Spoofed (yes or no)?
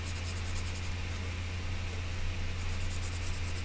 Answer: no